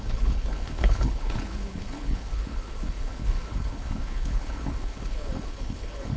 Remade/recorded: remade